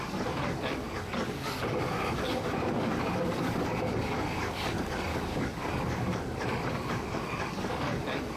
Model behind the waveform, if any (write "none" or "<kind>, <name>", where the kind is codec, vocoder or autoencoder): codec, DAC